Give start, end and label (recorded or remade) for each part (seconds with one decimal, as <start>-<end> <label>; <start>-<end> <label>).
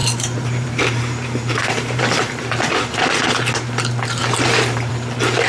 0.0-3.3 remade; 3.3-4.2 recorded; 4.2-4.9 remade; 4.9-5.5 recorded